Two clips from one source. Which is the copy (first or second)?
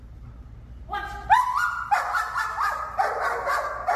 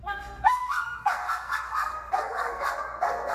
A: second